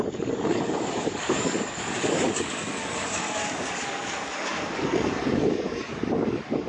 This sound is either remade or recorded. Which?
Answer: remade